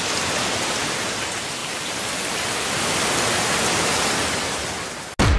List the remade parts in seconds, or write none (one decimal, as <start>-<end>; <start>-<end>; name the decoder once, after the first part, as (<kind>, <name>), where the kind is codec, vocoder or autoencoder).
none